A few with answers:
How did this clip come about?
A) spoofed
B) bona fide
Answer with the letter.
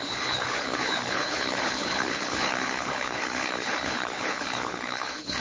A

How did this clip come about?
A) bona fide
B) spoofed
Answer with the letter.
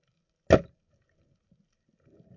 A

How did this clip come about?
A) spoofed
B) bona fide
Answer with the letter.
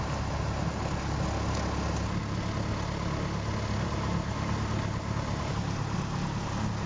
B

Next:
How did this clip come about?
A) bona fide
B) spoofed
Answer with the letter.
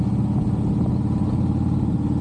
A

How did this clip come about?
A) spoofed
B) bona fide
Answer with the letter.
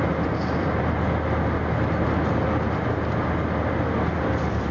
B